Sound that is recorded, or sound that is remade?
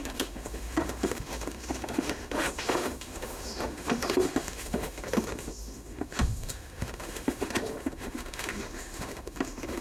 remade